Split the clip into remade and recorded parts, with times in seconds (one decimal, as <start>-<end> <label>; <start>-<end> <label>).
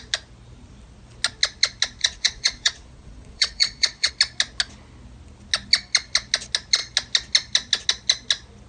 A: 0.0-2.0 recorded; 2.0-4.1 remade; 4.1-8.7 recorded